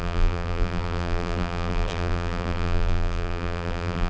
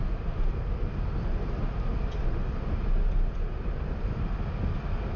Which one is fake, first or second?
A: first